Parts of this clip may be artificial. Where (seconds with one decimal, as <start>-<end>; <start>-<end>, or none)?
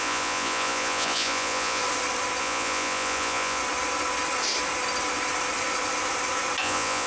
0.0-1.8; 2.4-3.6; 6.6-7.1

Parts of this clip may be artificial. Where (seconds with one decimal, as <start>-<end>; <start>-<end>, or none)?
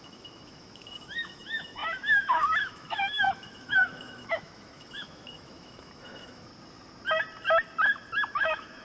0.0-6.5; 8.3-8.8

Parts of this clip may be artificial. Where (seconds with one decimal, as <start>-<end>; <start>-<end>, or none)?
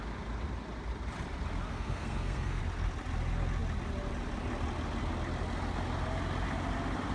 1.7-2.6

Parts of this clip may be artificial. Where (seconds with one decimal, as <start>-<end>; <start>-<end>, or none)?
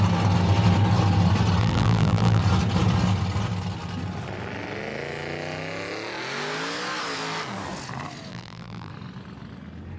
1.6-2.4; 8.3-8.9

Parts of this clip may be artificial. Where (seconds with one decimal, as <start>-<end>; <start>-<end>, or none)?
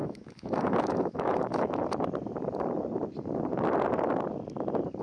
0.0-1.8